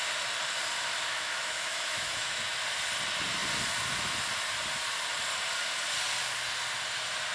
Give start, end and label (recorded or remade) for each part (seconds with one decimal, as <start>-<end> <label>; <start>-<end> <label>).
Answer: 0.0-1.1 recorded; 1.1-2.5 remade; 2.5-7.3 recorded